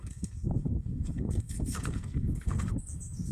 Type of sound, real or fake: fake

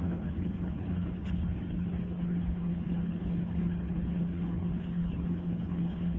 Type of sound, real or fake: fake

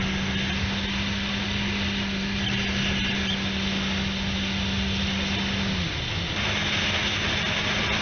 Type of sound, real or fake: real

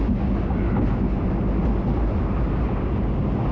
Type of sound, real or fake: real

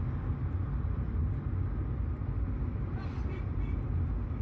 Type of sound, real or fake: real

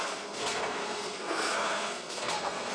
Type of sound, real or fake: fake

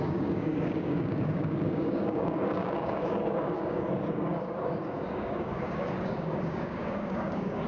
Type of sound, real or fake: fake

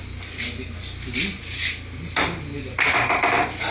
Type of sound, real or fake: real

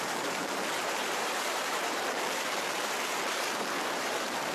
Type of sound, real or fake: fake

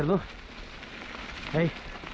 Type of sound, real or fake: real